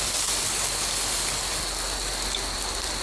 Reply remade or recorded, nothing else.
recorded